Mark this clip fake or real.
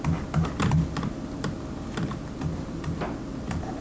real